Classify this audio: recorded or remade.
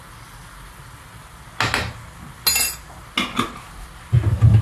recorded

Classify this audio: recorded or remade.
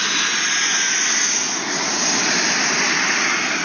recorded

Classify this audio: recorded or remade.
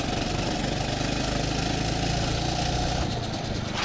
recorded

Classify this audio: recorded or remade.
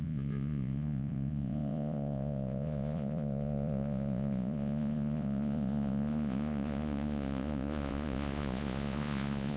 remade